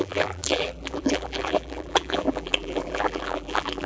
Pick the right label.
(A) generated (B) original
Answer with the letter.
A